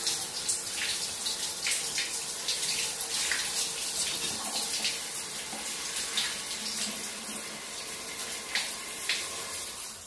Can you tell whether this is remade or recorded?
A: recorded